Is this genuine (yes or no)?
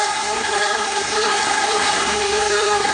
no